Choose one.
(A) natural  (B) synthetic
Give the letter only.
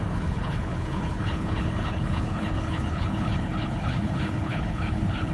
B